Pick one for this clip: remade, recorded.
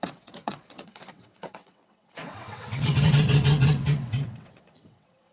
remade